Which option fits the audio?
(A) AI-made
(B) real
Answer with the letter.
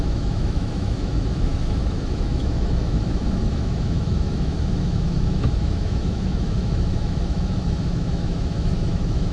A